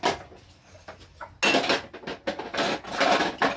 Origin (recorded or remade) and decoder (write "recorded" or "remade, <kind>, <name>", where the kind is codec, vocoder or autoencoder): recorded